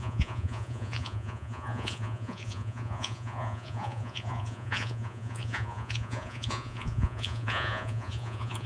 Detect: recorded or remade remade